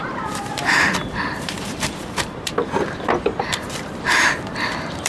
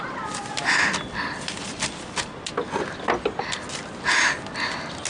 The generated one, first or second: first